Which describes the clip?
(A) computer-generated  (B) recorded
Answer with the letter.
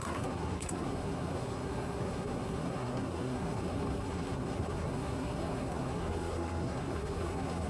A